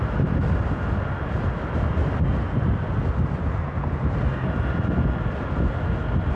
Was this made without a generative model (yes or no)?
yes